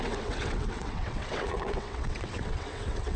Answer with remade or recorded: remade